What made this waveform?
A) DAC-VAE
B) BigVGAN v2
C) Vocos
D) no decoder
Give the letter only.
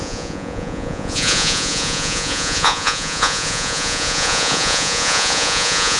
C